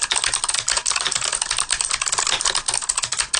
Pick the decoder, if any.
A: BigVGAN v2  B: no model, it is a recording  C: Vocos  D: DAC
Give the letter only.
B